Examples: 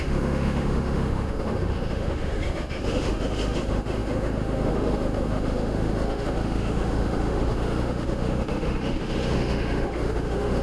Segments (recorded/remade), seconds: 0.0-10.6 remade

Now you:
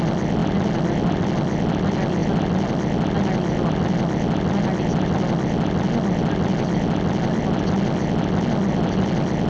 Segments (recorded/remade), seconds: 0.0-9.5 recorded

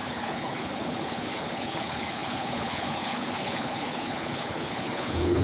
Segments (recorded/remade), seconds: 0.0-5.4 remade

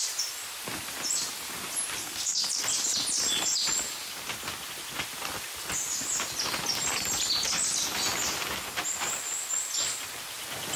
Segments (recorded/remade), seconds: 0.0-2.0 recorded; 2.0-2.5 remade; 2.5-10.8 recorded

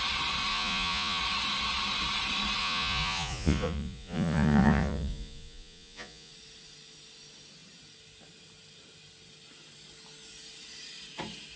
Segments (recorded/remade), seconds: 0.0-0.5 recorded; 0.5-1.2 remade; 1.2-2.6 recorded; 2.6-6.3 remade; 6.3-11.6 recorded

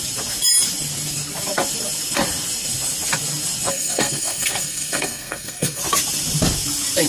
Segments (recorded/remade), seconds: 0.0-3.7 recorded; 3.7-5.8 remade; 5.8-7.1 recorded

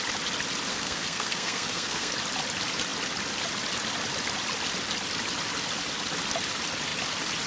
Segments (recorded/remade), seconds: 0.0-0.7 recorded; 0.7-2.1 remade; 2.1-7.5 recorded